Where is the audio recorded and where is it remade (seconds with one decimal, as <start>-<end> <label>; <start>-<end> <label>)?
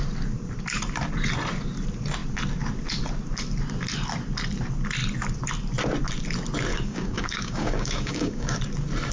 0.0-6.7 recorded; 6.7-8.6 remade; 8.6-9.1 recorded